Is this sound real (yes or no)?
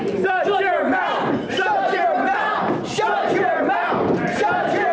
yes